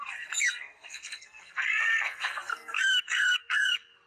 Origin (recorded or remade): remade